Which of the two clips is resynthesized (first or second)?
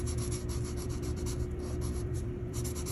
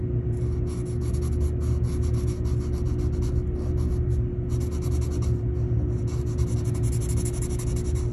first